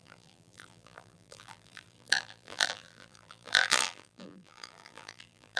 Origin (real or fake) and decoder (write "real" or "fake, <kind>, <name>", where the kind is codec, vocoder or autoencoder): fake, vocoder, BigVGAN v2